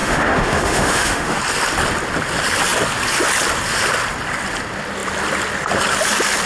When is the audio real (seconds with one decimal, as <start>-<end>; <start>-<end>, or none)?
1.4-6.5